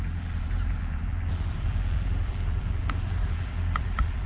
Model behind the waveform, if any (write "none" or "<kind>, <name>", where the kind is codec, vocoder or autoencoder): vocoder, BigVGAN v2